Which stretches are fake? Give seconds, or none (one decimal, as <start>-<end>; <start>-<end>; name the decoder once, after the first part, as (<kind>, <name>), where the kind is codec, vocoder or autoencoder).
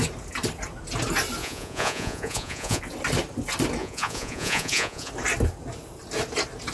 1.4-2.8 (vocoder, Vocos); 3.8-5.1